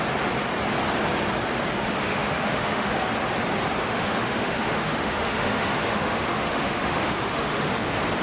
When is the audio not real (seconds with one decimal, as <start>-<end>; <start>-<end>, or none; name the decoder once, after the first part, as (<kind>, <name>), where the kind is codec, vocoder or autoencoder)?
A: 1.8-2.9 (autoencoder, DAC-VAE); 3.8-7.7